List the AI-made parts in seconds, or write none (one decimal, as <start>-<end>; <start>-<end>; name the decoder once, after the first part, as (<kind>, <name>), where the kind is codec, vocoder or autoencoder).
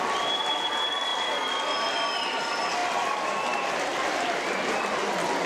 1.1-2.1 (vocoder, BigVGAN v2); 2.8-3.4; 3.9-4.8